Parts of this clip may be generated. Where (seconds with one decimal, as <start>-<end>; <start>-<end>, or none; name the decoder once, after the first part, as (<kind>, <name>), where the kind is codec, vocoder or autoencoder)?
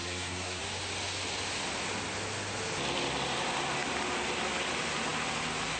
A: 0.0-0.6 (codec, SNAC)